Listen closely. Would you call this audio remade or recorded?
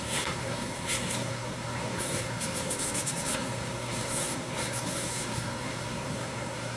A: remade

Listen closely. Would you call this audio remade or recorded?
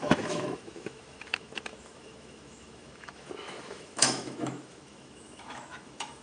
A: remade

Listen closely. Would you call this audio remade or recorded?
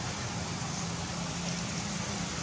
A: recorded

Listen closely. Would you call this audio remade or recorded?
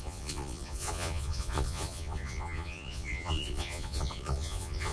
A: remade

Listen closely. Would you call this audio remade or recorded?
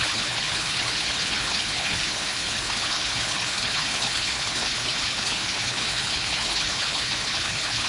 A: remade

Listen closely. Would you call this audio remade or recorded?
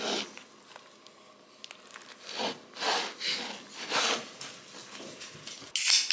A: recorded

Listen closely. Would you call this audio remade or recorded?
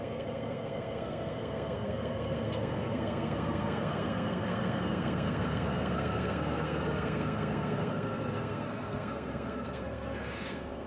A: remade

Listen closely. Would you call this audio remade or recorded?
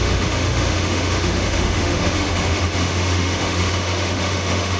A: remade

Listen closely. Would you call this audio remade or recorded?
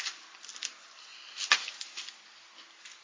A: recorded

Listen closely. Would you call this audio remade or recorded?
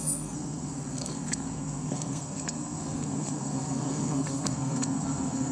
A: remade